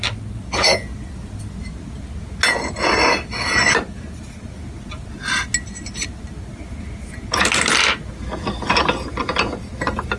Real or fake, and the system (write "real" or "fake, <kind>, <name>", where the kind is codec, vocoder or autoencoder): real